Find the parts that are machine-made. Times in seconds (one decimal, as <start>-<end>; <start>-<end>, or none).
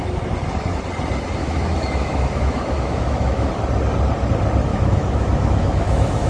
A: 1.4-3.5; 4.7-6.3